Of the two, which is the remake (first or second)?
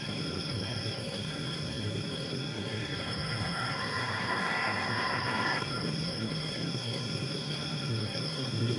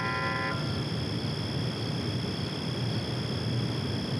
first